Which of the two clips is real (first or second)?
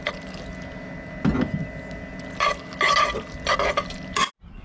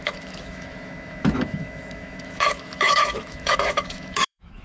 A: first